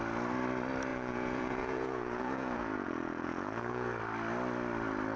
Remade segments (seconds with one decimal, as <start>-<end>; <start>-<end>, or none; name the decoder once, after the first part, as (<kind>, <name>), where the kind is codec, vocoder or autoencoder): 0.9-4.0 (vocoder, Vocos)